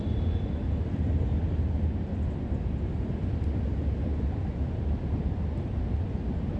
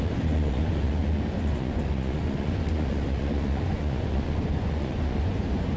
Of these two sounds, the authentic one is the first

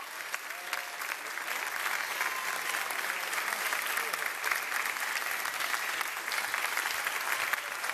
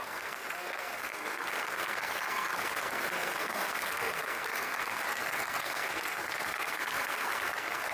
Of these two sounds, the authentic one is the first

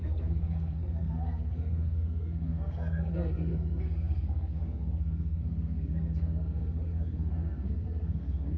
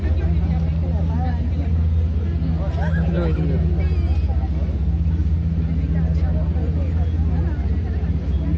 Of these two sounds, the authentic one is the second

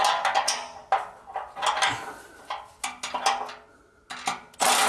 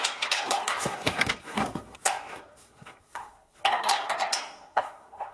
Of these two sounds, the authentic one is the first